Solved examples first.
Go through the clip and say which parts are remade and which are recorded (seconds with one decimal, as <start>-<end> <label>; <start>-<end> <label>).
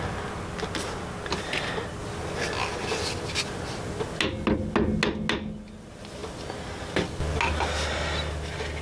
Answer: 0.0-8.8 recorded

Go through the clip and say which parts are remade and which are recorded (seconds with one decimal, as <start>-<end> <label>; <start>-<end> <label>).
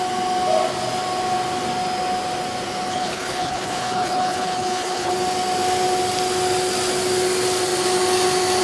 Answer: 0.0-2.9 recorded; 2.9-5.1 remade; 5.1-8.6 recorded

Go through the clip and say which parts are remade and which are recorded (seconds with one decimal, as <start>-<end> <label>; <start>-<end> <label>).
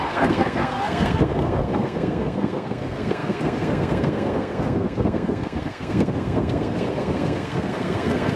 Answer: 0.0-8.4 remade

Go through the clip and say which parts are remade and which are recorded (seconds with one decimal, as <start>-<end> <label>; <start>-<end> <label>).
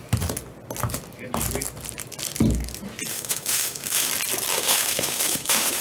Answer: 0.0-3.1 recorded; 3.1-4.1 remade; 4.1-4.5 recorded; 4.5-5.8 remade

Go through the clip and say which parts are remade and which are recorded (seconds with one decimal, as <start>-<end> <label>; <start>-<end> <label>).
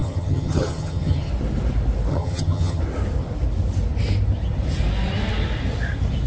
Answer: 0.0-1.3 remade; 1.3-2.1 recorded; 2.1-2.8 remade; 2.8-6.3 recorded